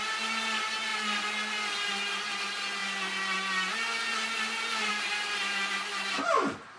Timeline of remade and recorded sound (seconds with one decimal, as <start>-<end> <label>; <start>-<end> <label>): 0.0-6.8 recorded